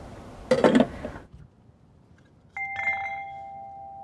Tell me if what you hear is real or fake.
real